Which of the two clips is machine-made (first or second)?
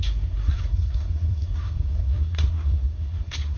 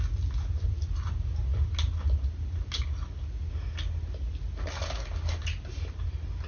first